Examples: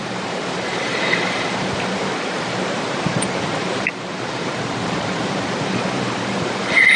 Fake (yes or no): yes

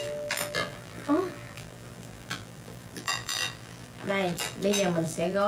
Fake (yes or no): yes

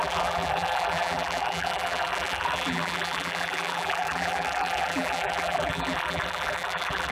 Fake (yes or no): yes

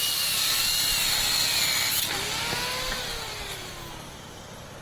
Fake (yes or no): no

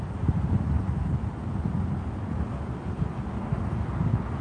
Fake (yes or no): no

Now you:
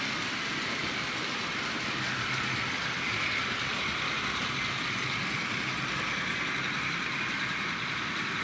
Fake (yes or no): no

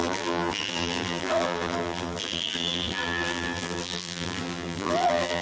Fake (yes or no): yes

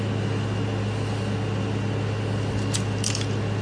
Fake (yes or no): no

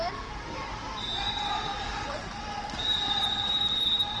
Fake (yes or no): yes